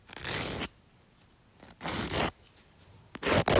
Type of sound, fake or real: real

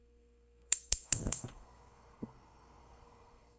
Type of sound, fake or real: fake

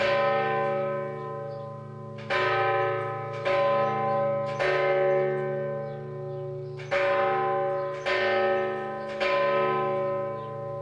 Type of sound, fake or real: real